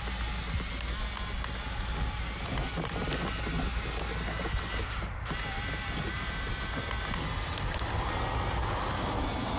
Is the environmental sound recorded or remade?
recorded